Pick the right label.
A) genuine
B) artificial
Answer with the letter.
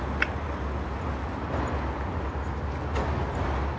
A